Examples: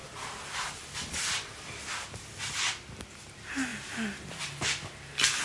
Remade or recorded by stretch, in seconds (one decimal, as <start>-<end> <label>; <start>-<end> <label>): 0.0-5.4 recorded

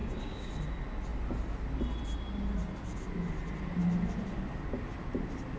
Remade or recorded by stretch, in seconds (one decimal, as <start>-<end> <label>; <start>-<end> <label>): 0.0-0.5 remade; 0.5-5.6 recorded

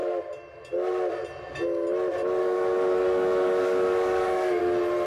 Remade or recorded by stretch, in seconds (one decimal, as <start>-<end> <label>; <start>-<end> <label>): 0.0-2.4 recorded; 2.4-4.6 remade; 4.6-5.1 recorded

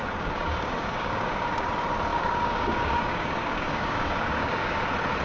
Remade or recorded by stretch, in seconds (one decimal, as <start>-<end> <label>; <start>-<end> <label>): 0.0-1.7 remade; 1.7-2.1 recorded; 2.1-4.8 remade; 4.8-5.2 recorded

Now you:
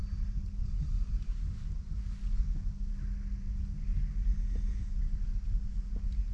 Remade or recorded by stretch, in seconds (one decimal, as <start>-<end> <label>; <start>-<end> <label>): 0.0-6.3 recorded

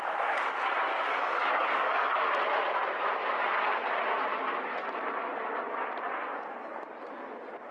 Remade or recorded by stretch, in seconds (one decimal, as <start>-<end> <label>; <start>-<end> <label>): 0.0-1.1 recorded; 1.1-2.1 remade; 2.1-7.7 recorded

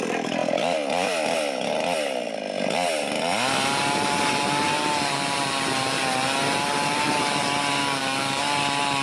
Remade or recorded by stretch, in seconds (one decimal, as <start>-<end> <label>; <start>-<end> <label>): 0.0-7.8 recorded; 7.8-8.4 remade; 8.4-9.0 recorded

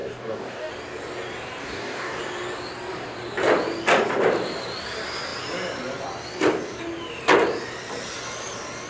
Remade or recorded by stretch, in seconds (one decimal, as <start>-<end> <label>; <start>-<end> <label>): 0.0-0.7 remade; 0.7-1.6 recorded; 1.6-2.2 remade; 2.2-8.9 recorded